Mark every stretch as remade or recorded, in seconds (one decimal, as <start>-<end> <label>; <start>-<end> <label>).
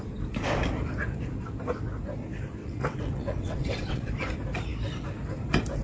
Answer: 0.0-2.6 recorded; 2.6-4.1 remade; 4.1-5.8 recorded